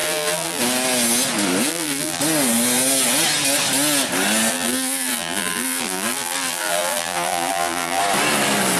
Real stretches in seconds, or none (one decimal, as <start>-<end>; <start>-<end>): 0.6-1.7; 2.2-4.5; 8.0-8.8